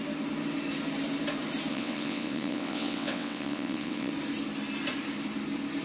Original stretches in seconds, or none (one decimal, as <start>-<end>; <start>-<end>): 0.0-1.7; 4.1-5.8